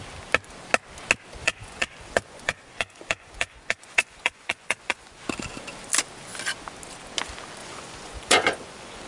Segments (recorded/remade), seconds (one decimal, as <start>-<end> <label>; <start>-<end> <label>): 0.0-1.4 recorded; 1.4-5.2 remade; 5.2-7.6 recorded; 7.6-9.1 remade

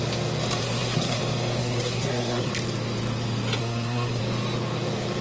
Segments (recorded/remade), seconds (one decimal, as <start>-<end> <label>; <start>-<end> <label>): 0.0-0.6 recorded; 0.6-1.2 remade; 1.2-1.6 recorded; 1.6-2.5 remade; 2.5-3.6 recorded; 3.6-4.2 remade; 4.2-5.2 recorded

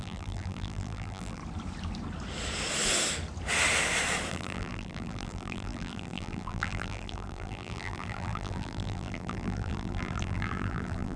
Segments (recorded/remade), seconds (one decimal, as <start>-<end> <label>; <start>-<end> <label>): 0.0-1.4 remade; 1.4-4.3 recorded; 4.3-11.2 remade